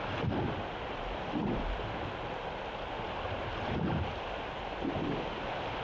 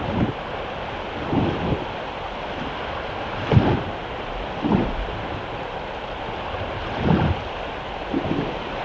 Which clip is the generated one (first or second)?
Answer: second